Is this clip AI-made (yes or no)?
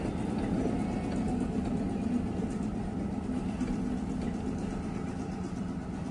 no